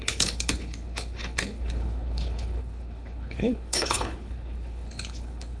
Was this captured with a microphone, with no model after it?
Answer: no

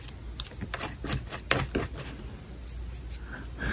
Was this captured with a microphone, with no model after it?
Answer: yes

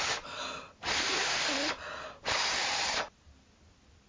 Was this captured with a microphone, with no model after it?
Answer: yes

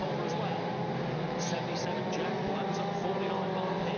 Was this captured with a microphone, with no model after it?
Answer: yes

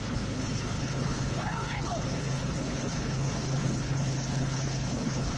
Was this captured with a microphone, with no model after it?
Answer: no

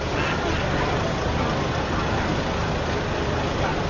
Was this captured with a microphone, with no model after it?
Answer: yes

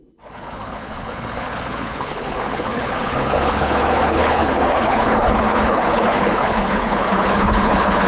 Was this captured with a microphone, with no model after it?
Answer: no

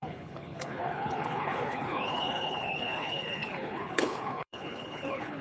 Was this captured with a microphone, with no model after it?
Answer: no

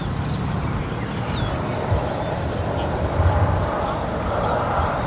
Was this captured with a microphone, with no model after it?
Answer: yes